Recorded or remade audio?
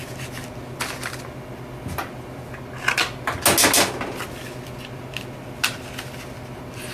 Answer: recorded